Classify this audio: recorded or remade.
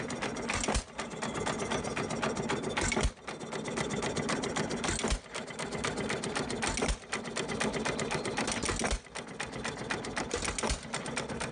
recorded